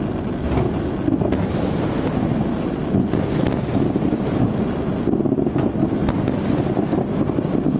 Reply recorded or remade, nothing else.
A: recorded